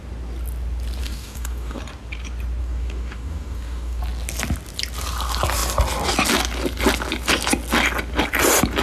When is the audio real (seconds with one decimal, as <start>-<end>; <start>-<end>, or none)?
0.0-1.0; 1.8-2.6; 4.0-8.8